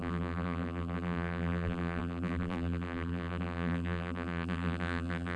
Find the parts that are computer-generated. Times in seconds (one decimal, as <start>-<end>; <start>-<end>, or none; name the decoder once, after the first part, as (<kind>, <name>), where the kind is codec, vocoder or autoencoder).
0.0-5.4 (vocoder, BigVGAN v2)